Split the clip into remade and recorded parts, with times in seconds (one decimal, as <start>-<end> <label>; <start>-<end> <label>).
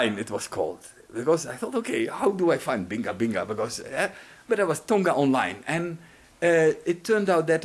0.0-7.6 recorded